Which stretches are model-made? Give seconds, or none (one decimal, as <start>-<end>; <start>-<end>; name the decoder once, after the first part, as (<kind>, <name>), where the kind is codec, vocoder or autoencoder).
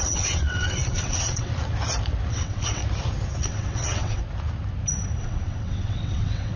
0.0-1.5 (vocoder, WaveNeXt); 2.3-2.8; 3.4-4.2; 5.2-6.6